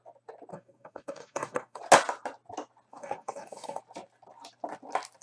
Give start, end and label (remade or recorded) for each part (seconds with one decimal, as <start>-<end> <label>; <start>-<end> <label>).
0.0-0.5 recorded; 0.5-1.8 remade; 1.8-2.9 recorded; 2.9-3.8 remade; 3.8-5.2 recorded